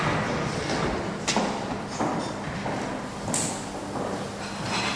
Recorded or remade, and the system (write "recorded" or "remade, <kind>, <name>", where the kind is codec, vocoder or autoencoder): recorded